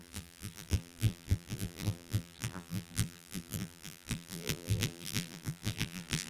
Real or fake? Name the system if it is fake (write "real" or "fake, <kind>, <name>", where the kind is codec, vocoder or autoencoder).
fake, vocoder, BigVGAN v2